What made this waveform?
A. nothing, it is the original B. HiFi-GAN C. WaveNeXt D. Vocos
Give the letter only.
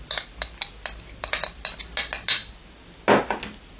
A